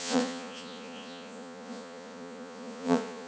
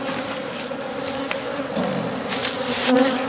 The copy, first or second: first